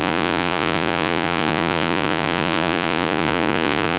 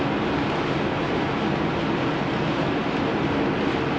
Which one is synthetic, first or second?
first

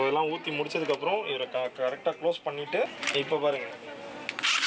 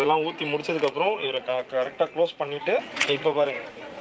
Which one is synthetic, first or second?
second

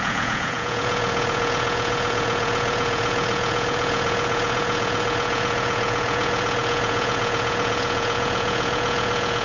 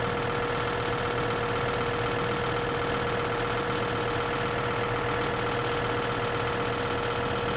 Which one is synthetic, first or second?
first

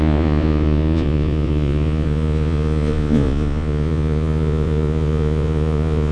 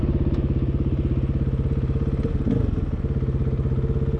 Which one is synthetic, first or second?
first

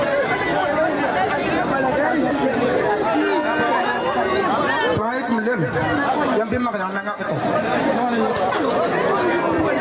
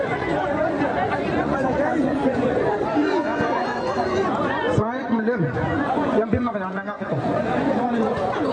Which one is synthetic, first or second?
second